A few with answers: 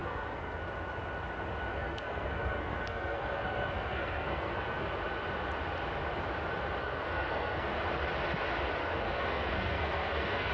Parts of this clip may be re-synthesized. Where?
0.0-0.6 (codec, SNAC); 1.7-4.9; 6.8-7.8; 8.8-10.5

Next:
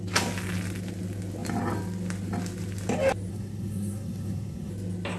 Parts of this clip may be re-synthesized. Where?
3.3-4.7 (codec, SNAC)

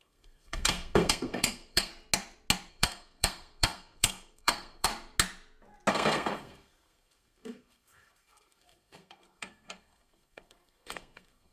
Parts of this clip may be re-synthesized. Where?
0.0-1.9 (codec, SNAC); 2.7-4.9; 5.9-11.5

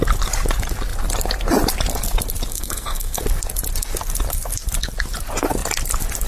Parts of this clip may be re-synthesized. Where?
2.5-3.2 (codec, SNAC)

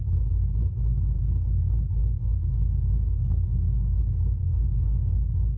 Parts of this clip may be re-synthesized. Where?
2.0-4.0 (codec, SNAC); 4.4-5.1

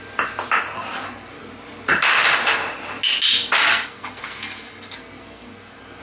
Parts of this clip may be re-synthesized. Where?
0.7-1.5 (codec, SNAC); 3.6-6.0

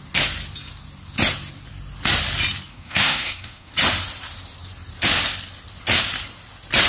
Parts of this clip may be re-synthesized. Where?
2.7-3.7 (codec, SNAC)